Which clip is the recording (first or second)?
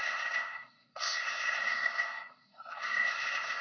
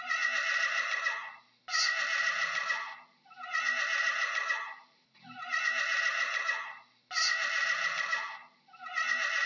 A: second